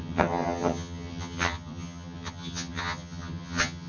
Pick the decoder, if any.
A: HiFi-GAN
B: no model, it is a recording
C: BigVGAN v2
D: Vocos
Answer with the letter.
A